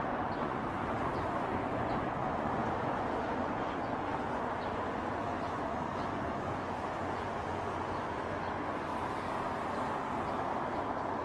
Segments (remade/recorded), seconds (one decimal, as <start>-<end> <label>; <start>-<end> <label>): 0.0-8.9 remade; 8.9-11.2 recorded

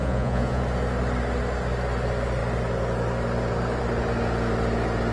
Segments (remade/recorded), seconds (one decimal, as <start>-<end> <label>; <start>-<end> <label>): 0.0-0.6 remade; 0.6-5.1 recorded

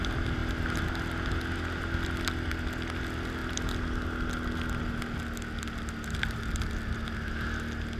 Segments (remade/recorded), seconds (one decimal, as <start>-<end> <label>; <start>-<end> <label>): 0.0-8.0 recorded

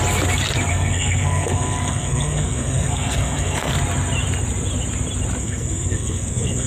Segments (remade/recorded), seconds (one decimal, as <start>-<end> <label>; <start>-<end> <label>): 0.0-0.7 recorded; 0.7-3.7 remade; 3.7-5.4 recorded; 5.4-6.7 remade

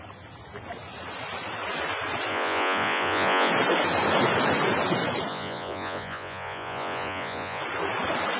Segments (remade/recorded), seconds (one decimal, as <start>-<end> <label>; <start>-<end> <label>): 0.0-2.3 recorded; 2.3-3.5 remade; 3.5-5.3 recorded; 5.3-7.6 remade; 7.6-8.4 recorded

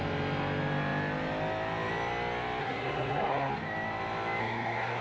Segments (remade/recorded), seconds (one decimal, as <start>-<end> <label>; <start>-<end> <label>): 0.0-2.6 recorded; 2.6-3.5 remade; 3.5-4.4 recorded; 4.4-5.0 remade